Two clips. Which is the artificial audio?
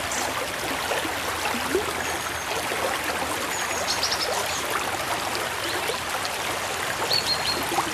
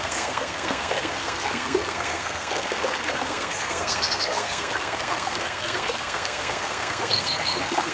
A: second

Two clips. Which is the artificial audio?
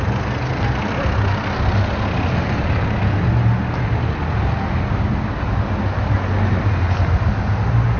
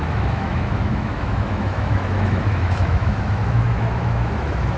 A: second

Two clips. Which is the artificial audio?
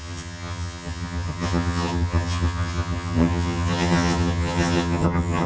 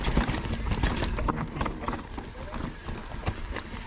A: first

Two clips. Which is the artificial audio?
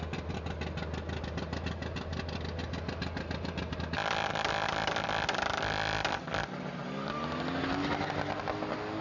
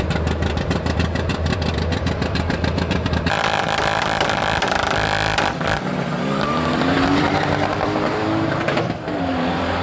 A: second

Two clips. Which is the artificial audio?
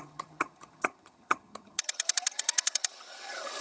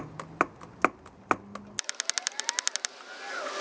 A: first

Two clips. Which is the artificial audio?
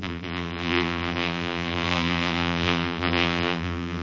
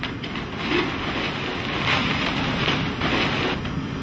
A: first